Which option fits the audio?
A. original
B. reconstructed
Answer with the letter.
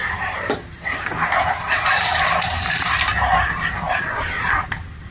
B